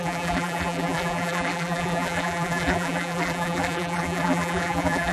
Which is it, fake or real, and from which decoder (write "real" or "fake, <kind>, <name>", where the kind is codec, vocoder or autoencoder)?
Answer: fake, vocoder, BigVGAN v2